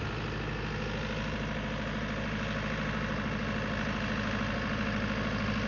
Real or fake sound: real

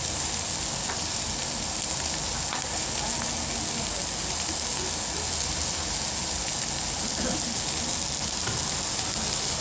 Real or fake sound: real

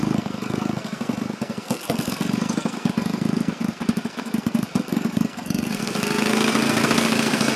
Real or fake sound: fake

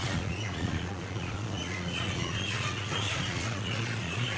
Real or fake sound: fake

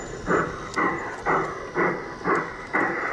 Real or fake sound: real